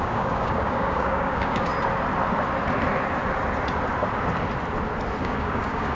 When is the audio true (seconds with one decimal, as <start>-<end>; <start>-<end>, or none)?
1.7-5.2